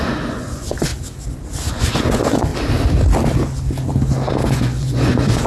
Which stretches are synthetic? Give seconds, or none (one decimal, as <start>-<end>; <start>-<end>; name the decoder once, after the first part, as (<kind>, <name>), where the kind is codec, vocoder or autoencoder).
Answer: 0.0-0.9 (vocoder, Vocos); 1.7-2.5; 4.5-5.5